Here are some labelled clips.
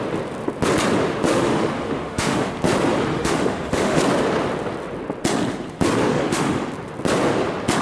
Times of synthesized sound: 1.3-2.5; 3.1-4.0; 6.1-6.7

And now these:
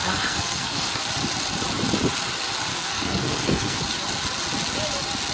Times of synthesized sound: 0.0-1.0; 2.7-3.8

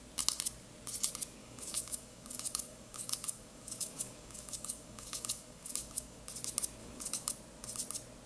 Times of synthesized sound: 1.4-6.2; 6.8-7.3

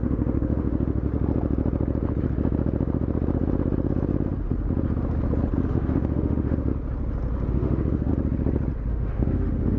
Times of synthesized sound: 0.0-1.1; 5.7-6.7; 7.5-8.1; 8.9-9.8

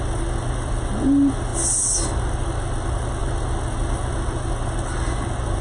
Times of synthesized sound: none